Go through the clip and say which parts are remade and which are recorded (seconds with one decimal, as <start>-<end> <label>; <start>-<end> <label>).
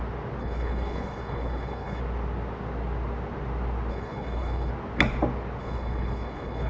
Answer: 0.0-0.4 recorded; 0.4-2.0 remade; 2.0-3.9 recorded; 3.9-4.7 remade; 4.7-5.6 recorded; 5.6-6.7 remade